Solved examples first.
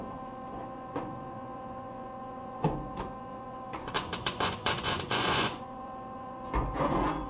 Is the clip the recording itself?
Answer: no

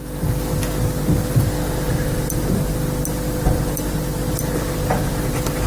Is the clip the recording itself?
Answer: yes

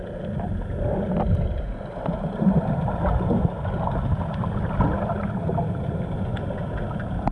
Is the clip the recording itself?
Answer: yes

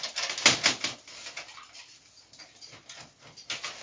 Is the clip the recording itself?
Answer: yes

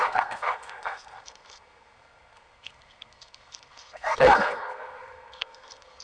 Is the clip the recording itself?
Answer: no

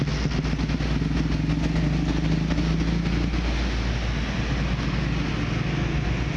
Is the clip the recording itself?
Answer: yes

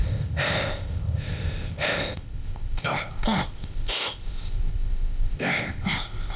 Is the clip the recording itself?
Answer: no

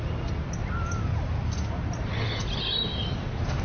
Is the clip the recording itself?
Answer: yes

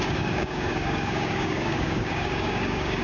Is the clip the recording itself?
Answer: no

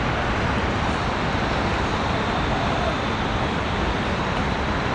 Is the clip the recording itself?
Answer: no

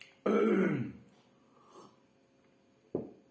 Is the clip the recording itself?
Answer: yes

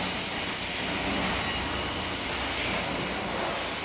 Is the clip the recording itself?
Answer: yes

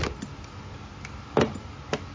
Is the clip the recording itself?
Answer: yes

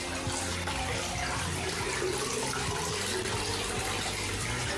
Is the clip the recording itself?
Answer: yes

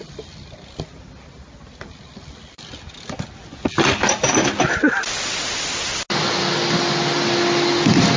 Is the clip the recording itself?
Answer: yes